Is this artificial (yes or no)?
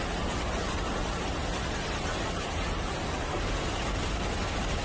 no